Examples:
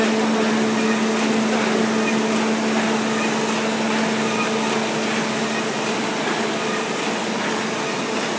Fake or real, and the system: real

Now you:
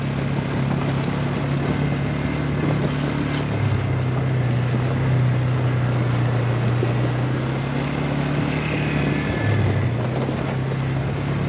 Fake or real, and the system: real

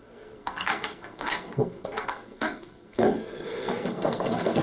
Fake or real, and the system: fake, codec, SNAC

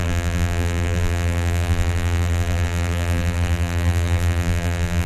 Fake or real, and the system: fake, vocoder, BigVGAN v2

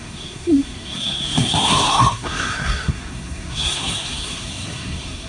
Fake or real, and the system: fake, codec, SNAC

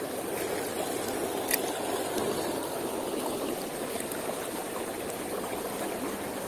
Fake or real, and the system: real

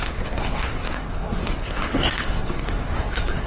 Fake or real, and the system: fake, codec, SNAC